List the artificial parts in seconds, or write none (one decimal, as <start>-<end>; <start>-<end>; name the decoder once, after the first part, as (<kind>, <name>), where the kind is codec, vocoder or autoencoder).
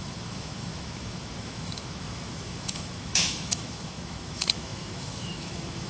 0.0-5.9 (autoencoder, DAC-VAE)